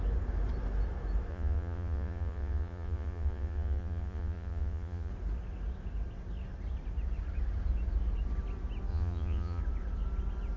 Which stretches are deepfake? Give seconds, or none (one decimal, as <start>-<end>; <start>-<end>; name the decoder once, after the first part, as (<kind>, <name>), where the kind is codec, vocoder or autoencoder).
1.3-5.1 (vocoder, Vocos); 8.9-9.6